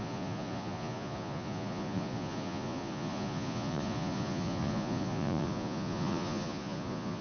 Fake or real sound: fake